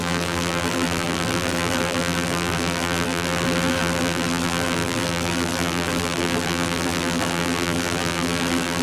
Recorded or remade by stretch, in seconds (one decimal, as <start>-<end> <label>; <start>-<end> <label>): 0.0-8.8 remade